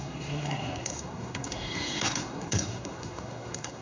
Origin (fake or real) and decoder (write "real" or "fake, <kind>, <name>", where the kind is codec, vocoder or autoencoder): fake, codec, SNAC